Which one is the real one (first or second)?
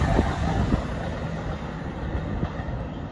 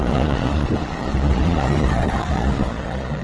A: first